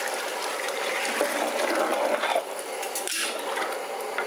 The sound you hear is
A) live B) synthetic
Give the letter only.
A